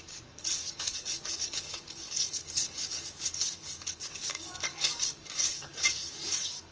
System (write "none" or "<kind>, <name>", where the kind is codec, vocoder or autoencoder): codec, DAC